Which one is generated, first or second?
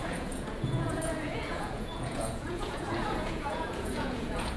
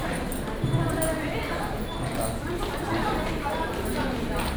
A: first